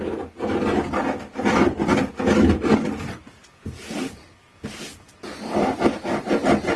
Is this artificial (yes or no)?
no